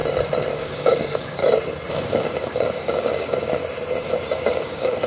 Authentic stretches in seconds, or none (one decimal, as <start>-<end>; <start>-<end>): 0.0-0.5; 1.4-1.9; 3.6-4.5